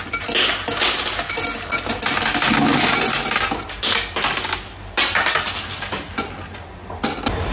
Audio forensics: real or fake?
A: real